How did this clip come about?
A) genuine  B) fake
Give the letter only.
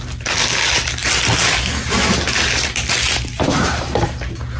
A